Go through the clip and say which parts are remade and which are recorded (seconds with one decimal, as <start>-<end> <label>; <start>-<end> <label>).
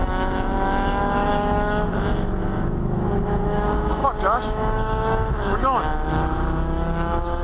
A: 0.0-7.4 remade